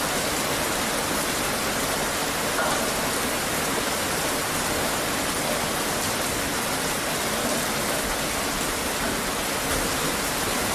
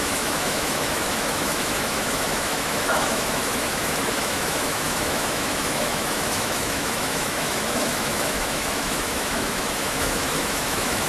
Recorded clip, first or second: first